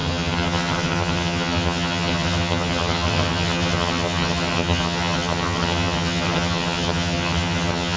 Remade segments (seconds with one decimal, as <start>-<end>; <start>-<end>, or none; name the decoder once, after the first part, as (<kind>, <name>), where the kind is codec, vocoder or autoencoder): 0.0-8.0 (vocoder, HiFi-GAN)